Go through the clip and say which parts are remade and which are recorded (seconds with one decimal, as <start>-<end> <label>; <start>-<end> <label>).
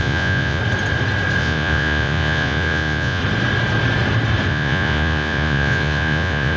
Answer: 0.0-0.6 remade; 0.6-1.4 recorded; 1.4-3.2 remade; 3.2-4.5 recorded; 4.5-6.6 remade